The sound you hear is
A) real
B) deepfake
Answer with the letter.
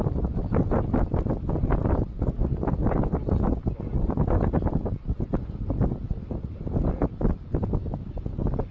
A